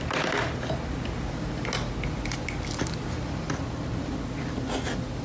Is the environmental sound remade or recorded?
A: recorded